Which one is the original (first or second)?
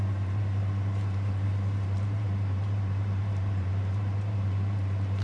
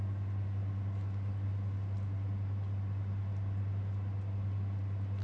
second